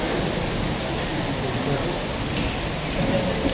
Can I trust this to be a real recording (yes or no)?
yes